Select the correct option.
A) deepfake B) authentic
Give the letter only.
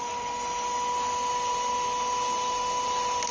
B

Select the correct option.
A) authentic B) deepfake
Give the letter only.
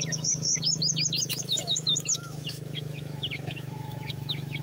B